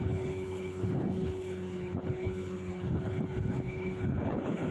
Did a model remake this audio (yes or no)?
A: yes